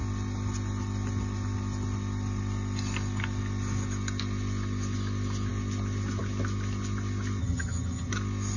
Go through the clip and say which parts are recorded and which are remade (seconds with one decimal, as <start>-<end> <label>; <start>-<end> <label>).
0.0-7.4 recorded; 7.4-8.1 remade; 8.1-8.6 recorded